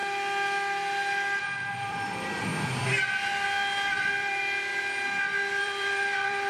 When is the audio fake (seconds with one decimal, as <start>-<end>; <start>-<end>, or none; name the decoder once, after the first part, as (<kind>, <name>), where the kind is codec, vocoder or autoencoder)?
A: 1.4-2.5 (vocoder, BigVGAN v2); 4.1-4.7; 5.6-6.5

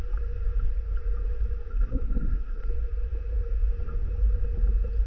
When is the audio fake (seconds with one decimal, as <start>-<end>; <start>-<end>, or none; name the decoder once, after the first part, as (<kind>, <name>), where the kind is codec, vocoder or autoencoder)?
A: 1.7-2.7 (codec, SNAC)

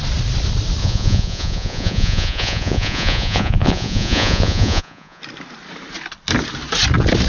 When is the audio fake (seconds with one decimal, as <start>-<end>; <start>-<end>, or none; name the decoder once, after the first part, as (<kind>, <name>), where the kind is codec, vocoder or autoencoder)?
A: 0.8-5.2 (vocoder, Vocos)

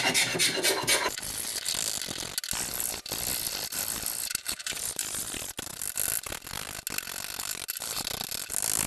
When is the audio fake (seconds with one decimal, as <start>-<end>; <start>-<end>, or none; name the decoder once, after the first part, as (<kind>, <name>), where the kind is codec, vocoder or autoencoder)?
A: 4.4-5.2 (vocoder, BigVGAN v2)

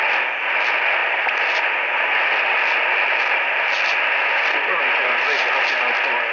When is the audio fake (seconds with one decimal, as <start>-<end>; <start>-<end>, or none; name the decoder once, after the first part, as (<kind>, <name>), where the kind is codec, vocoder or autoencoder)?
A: none

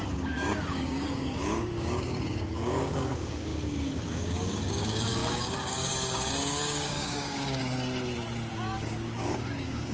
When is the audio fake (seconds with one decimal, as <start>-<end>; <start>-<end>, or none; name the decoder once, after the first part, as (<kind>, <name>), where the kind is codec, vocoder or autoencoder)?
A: 0.0-7.6 (codec, DAC); 8.5-9.9